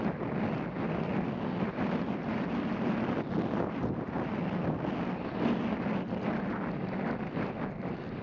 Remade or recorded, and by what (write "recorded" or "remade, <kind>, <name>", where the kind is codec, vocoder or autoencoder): recorded